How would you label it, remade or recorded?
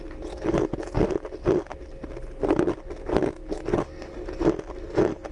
recorded